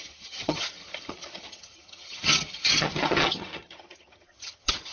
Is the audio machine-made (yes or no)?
yes